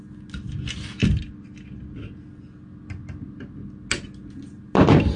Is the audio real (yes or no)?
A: yes